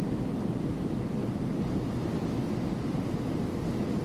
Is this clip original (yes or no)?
yes